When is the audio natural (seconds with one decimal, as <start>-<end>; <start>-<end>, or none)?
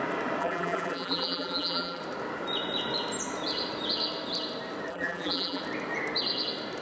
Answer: 0.0-0.4; 2.0-4.9; 5.6-6.8